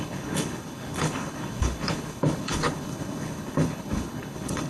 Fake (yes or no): yes